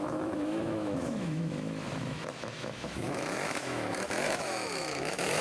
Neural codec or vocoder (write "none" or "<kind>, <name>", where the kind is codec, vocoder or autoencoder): autoencoder, DAC-VAE